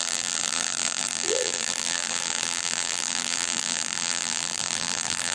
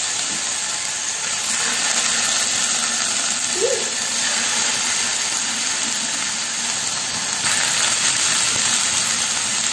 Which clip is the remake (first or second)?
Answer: first